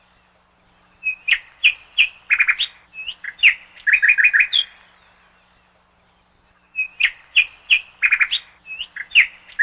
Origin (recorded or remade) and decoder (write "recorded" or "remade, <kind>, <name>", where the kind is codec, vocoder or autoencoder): recorded